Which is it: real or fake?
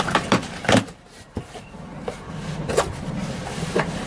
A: fake